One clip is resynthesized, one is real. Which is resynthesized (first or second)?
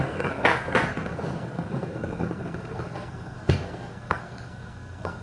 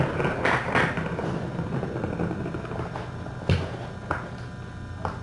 first